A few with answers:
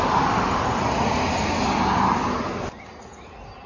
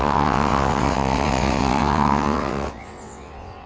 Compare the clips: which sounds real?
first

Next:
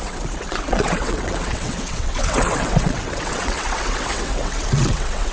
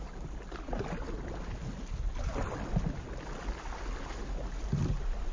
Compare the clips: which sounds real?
second